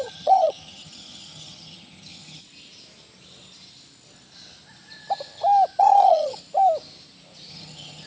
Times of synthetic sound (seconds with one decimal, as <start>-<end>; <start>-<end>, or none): 0.0-2.4; 5.8-6.4; 7.5-8.1